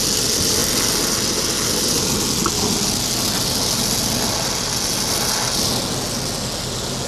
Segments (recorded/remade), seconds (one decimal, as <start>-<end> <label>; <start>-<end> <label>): 0.0-7.1 recorded